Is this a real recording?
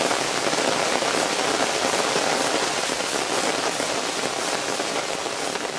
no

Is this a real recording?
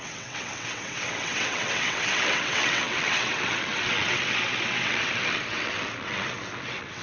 no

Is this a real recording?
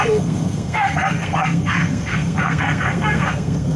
no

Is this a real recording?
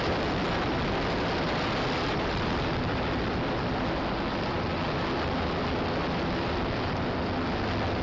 yes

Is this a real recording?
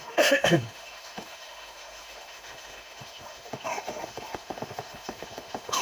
no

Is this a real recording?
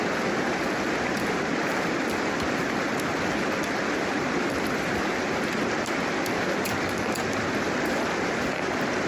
no